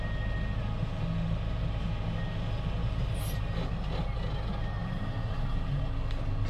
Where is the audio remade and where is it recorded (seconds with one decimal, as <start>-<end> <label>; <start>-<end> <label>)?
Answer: 0.0-4.8 recorded; 4.8-5.8 remade; 5.8-6.5 recorded